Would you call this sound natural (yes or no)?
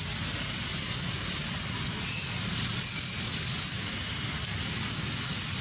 yes